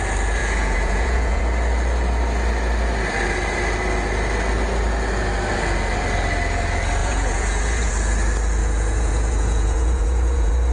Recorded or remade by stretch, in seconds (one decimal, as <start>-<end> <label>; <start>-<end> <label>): 0.0-0.4 recorded; 0.4-1.4 remade; 1.4-7.0 recorded; 7.0-7.9 remade; 7.9-8.6 recorded; 8.6-10.7 remade